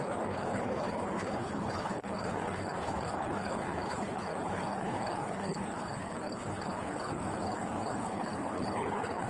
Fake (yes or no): yes